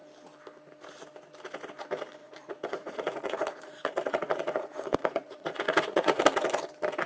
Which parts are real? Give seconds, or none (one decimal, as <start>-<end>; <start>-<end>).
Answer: 0.0-2.2; 6.2-7.1